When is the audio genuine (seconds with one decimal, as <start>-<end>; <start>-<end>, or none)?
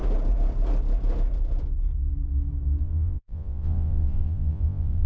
0.0-2.8